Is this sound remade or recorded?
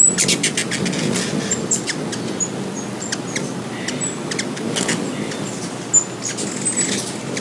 recorded